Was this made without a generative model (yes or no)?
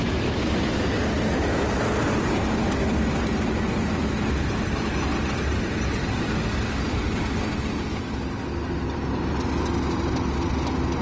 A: yes